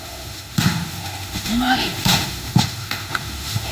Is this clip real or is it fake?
fake